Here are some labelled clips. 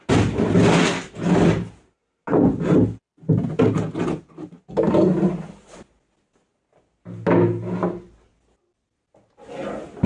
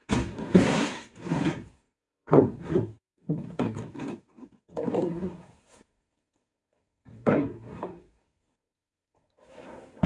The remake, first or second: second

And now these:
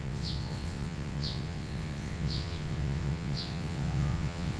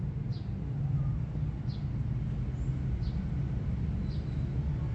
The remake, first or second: first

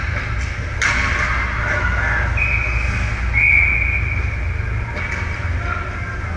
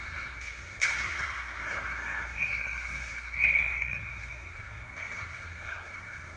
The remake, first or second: second